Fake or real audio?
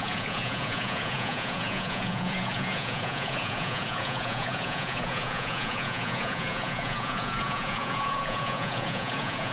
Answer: fake